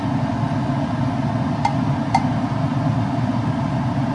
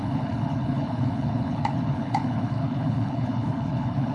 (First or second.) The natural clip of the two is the first